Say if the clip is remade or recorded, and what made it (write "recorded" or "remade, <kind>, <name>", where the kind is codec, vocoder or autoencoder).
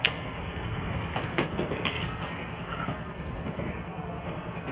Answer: remade, codec, SNAC